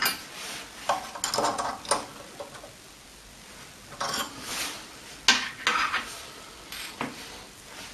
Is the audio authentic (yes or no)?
yes